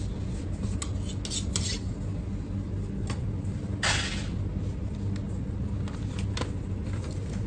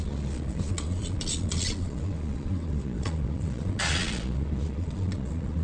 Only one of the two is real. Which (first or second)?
first